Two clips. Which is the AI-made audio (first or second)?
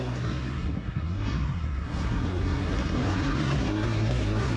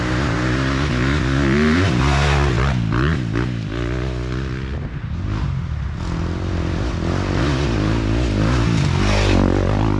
first